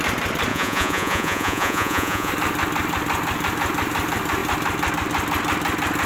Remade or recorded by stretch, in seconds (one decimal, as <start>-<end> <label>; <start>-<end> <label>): 0.0-0.5 recorded; 0.5-2.3 remade; 2.3-6.1 recorded

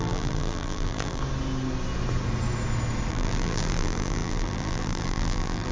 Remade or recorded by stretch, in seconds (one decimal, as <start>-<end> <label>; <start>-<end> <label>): 0.0-1.2 remade; 1.2-3.1 recorded; 3.1-5.7 remade

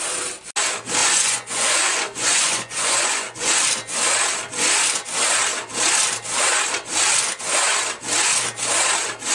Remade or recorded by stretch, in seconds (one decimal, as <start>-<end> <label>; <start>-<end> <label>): 0.0-1.0 recorded; 1.0-3.5 remade; 3.5-9.3 recorded

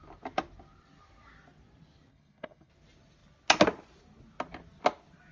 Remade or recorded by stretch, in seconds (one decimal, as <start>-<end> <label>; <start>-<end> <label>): 0.0-2.1 recorded; 2.1-2.7 remade; 2.7-5.3 recorded